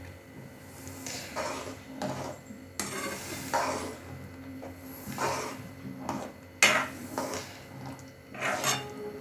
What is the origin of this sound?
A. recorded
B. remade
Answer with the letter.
A